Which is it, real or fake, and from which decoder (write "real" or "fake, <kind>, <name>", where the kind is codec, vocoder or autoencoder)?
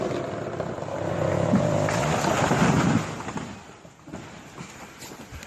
real